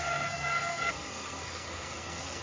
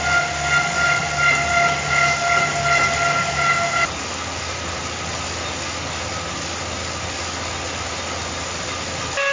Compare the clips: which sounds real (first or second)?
second